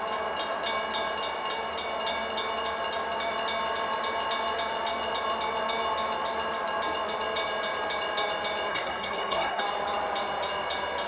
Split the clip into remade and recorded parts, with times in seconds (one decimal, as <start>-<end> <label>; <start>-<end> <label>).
0.0-8.7 recorded; 8.7-9.6 remade; 9.6-11.1 recorded